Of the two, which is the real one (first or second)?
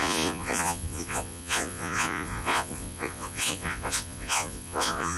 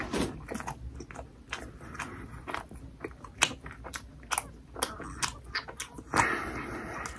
second